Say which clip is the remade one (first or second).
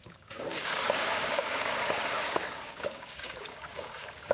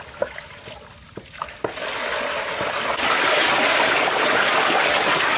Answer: first